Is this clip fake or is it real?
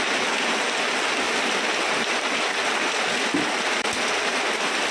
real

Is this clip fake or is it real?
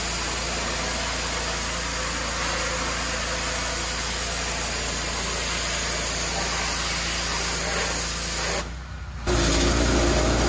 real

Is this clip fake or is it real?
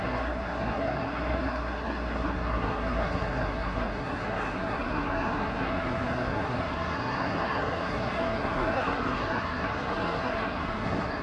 fake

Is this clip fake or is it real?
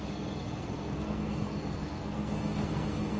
fake